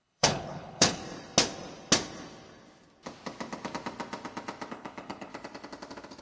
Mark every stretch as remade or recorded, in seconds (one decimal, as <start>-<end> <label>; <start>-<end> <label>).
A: 0.0-1.0 remade; 1.0-4.7 recorded; 4.7-5.3 remade; 5.3-6.2 recorded